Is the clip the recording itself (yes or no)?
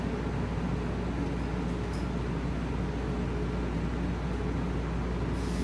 yes